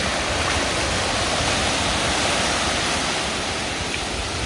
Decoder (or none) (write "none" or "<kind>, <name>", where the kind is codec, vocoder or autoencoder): none